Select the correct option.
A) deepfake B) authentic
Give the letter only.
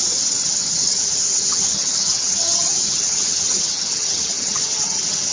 A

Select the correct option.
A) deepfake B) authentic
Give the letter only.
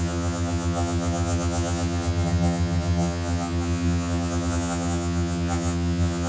A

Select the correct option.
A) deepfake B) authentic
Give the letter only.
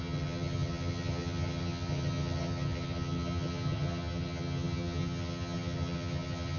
A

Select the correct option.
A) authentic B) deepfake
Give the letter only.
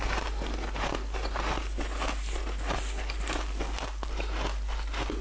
A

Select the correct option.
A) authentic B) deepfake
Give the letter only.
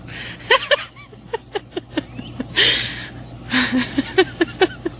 A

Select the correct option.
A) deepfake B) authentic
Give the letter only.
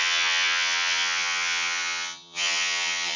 A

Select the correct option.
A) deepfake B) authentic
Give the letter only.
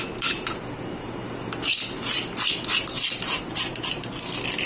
B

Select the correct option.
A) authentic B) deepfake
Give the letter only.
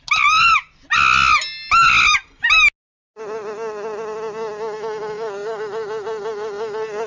A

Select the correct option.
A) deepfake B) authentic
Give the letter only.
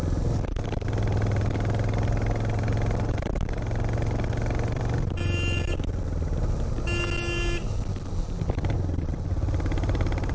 B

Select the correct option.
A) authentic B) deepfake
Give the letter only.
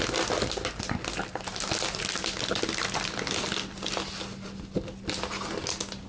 A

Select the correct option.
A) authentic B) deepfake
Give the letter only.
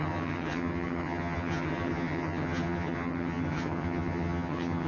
B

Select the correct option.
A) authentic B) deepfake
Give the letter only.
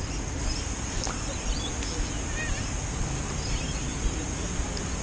A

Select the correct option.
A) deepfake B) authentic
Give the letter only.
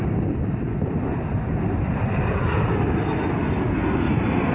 B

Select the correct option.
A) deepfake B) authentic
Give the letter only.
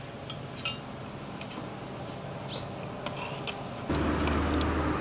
B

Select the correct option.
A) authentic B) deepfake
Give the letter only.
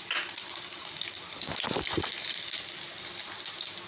A